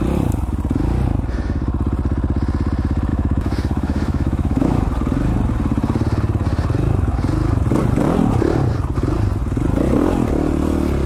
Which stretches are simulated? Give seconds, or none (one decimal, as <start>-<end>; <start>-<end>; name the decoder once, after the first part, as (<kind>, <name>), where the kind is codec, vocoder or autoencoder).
3.1-4.8 (autoencoder, DAC-VAE)